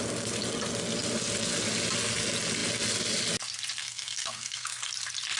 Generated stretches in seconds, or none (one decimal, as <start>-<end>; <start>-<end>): 3.8-4.9